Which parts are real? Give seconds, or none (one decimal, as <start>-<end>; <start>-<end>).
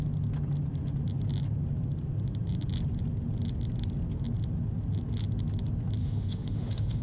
0.0-6.0